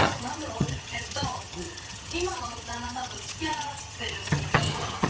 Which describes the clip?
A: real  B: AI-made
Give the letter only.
B